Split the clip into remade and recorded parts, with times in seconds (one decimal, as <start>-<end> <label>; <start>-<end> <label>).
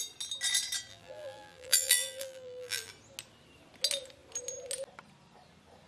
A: 0.0-0.9 recorded; 0.9-2.9 remade; 2.9-5.9 recorded